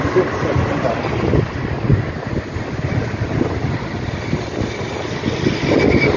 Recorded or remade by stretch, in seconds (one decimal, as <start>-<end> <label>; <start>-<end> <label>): 0.0-6.2 recorded